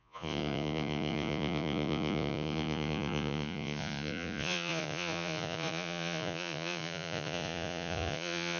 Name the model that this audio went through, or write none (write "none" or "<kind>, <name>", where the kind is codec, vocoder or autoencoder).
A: vocoder, Vocos